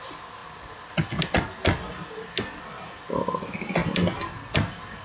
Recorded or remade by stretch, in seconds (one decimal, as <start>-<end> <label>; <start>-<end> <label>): 0.0-5.0 recorded